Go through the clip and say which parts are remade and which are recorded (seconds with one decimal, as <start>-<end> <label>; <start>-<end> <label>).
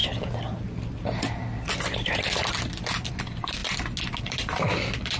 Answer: 0.0-3.6 remade; 3.6-4.2 recorded; 4.2-5.2 remade